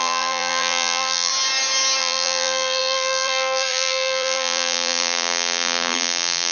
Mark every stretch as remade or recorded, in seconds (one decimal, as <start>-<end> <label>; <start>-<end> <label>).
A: 0.0-1.3 remade; 1.3-2.0 recorded; 2.0-6.5 remade